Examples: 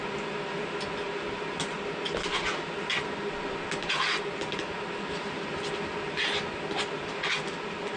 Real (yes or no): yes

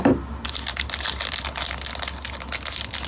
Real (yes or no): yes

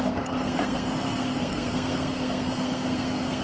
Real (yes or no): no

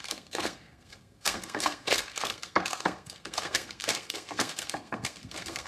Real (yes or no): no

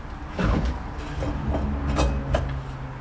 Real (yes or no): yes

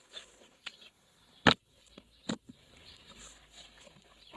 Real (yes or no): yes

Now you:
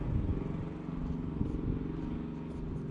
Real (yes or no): yes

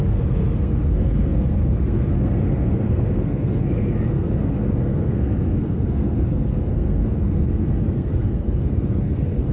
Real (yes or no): no